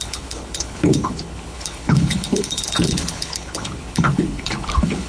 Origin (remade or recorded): remade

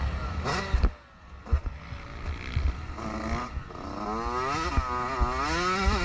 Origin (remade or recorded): recorded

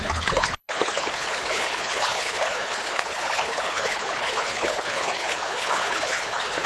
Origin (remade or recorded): remade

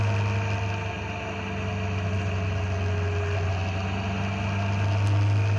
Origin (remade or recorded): recorded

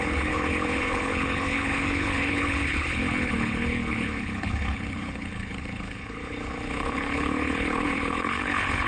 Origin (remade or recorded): remade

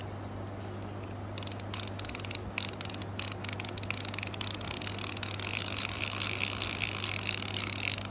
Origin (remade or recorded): recorded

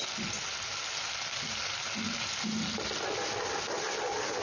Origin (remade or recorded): recorded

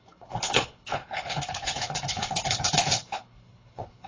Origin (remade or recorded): remade